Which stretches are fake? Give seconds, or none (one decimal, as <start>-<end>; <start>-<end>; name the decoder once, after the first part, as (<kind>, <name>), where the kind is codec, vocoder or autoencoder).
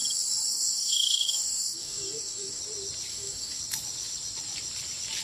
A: 0.5-2.6 (codec, DAC); 3.1-3.6